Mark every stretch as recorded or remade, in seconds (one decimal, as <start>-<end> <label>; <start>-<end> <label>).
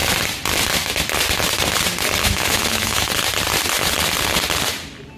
0.0-2.2 recorded; 2.2-3.1 remade; 3.1-5.2 recorded